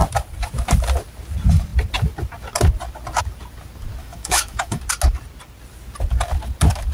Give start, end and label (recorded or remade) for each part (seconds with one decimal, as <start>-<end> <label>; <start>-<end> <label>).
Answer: 0.0-4.0 recorded; 4.0-4.8 remade; 4.8-6.9 recorded